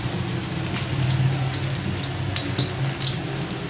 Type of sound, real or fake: real